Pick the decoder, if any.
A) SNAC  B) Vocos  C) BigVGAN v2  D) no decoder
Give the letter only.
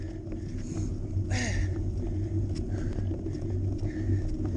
D